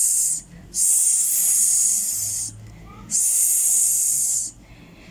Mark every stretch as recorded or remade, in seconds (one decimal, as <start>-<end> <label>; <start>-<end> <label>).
0.0-5.1 recorded